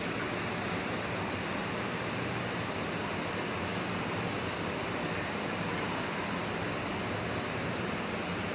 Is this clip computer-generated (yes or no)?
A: no